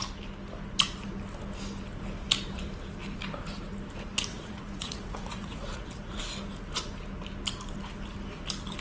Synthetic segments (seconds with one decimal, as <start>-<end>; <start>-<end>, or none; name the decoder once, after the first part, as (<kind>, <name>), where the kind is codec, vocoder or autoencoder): 4.3-6.2 (vocoder, Vocos)